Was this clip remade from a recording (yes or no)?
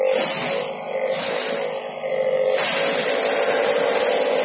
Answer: no